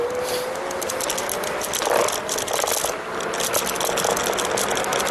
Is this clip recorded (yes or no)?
yes